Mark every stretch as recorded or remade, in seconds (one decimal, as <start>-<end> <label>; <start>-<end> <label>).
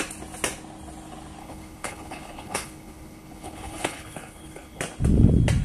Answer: 0.0-1.4 recorded; 1.4-4.8 remade; 4.8-5.6 recorded